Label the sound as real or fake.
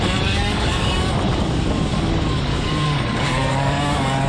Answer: fake